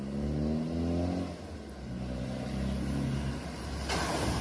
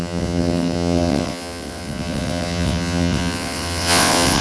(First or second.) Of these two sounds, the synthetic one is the second